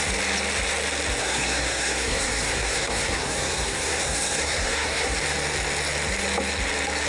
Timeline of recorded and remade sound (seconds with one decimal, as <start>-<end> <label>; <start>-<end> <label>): 0.0-1.2 recorded; 1.2-5.2 remade; 5.2-7.1 recorded